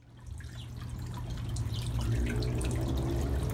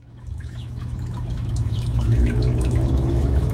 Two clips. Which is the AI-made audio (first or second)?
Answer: second